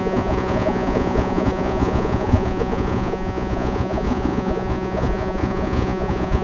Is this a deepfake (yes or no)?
yes